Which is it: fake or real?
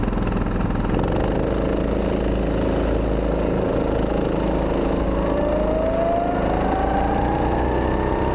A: real